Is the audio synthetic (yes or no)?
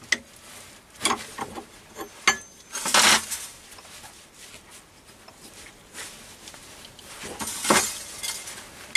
no